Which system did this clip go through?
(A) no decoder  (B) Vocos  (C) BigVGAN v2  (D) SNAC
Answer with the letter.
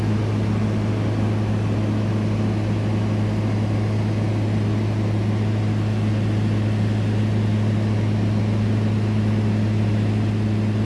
A